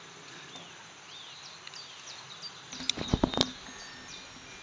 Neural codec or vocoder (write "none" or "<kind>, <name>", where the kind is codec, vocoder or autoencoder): none